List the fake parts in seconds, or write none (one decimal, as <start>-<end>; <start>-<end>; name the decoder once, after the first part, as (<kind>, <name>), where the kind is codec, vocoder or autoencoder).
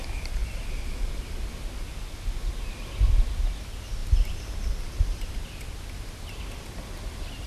none